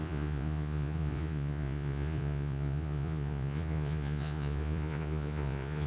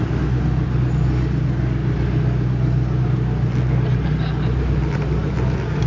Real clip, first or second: second